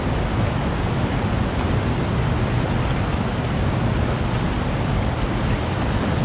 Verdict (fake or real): real